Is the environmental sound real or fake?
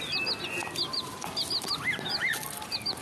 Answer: real